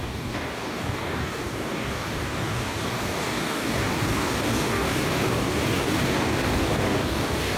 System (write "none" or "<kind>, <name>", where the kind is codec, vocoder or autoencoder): codec, DAC